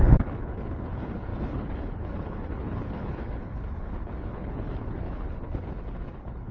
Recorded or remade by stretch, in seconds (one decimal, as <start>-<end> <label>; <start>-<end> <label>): 0.0-6.5 remade